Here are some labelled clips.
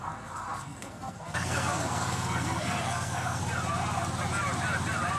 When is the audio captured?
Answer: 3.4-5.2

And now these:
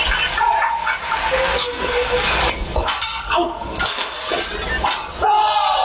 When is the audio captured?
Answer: 0.0-1.5; 2.4-2.8; 4.2-5.8

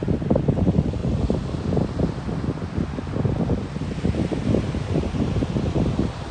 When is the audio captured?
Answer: 0.0-6.3

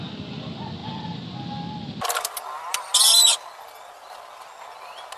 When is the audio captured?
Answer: 0.0-5.2

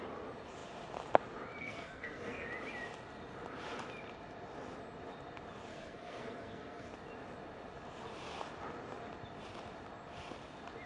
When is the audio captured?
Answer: 0.0-1.6; 2.5-5.7; 6.9-10.9

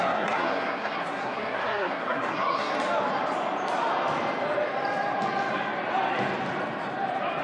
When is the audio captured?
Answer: 2.7-7.4

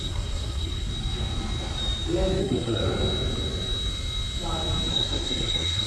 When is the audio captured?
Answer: 0.9-2.4; 2.8-4.9

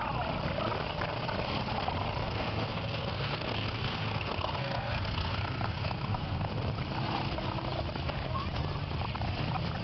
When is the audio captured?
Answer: 0.0-2.2; 6.5-9.8